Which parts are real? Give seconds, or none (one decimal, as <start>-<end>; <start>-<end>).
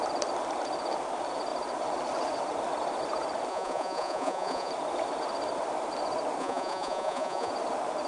0.0-3.5; 4.7-6.4; 7.5-8.1